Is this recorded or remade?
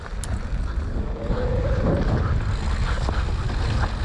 recorded